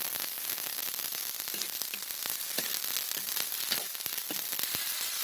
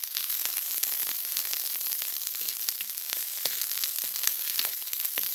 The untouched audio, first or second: first